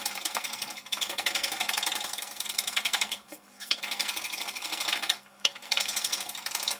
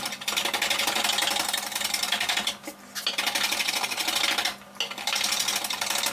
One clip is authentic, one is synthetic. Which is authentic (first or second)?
second